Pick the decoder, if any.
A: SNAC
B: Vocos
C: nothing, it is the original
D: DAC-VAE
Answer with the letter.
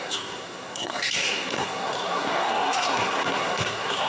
A